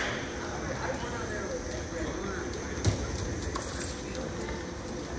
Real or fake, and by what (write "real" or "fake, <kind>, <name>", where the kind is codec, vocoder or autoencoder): real